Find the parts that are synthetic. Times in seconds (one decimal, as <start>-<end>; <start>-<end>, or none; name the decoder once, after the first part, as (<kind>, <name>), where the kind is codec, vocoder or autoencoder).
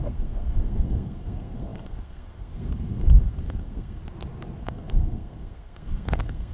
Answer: 0.0-4.0 (codec, SNAC); 4.6-6.5